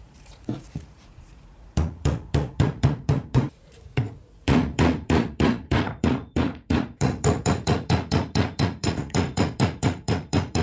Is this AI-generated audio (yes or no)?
yes